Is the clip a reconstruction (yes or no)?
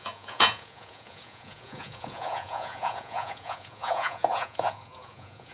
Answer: yes